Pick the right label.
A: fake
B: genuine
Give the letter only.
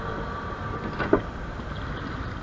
B